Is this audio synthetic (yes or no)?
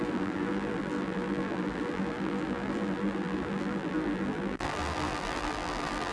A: yes